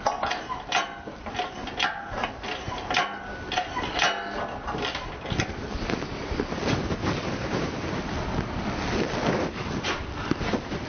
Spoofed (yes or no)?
no